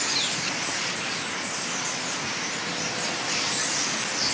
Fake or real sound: real